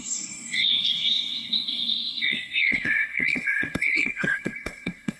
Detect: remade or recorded remade